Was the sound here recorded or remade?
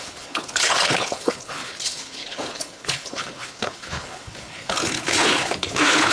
remade